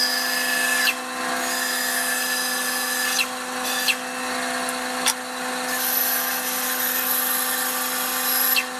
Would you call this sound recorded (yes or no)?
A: yes